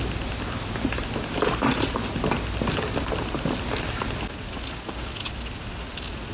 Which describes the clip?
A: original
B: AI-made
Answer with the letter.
A